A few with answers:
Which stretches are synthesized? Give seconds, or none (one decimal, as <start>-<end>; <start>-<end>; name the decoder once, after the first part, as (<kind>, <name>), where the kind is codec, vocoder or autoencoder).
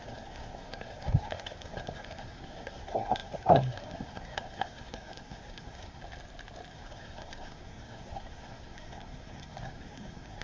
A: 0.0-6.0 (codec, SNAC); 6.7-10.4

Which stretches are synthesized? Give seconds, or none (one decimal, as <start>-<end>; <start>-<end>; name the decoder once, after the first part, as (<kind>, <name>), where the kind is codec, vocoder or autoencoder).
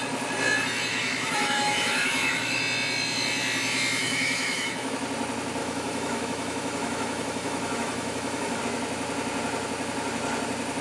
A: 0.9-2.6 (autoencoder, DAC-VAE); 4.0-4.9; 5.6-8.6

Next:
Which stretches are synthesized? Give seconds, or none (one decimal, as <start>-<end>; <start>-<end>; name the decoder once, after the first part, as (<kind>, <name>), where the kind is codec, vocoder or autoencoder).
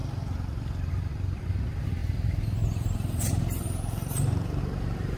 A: 0.0-5.2 (vocoder, BigVGAN v2)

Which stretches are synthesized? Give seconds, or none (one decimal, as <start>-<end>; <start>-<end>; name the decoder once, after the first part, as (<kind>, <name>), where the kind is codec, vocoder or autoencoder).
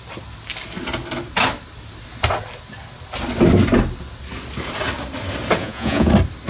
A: 5.6-6.1 (vocoder, Vocos)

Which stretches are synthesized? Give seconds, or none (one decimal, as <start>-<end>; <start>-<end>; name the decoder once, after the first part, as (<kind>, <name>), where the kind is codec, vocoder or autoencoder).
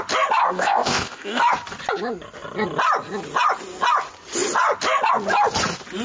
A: 0.4-1.4 (codec, ZipCodec)